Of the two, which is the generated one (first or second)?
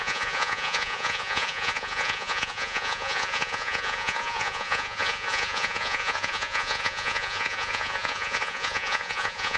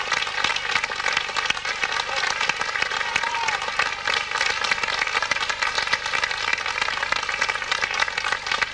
first